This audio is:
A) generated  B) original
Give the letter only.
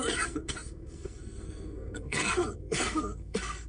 A